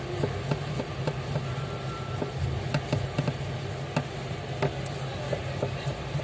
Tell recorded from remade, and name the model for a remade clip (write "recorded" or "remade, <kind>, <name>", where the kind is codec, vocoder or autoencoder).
recorded